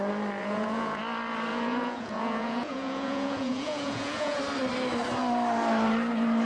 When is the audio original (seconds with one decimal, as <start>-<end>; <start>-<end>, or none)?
0.0-0.4; 1.0-1.5; 4.4-6.5